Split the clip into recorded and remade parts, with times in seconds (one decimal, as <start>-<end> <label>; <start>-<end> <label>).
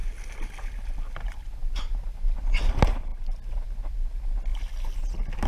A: 0.0-5.5 recorded